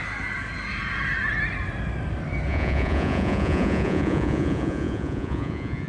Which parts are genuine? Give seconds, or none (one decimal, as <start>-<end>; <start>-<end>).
0.0-2.5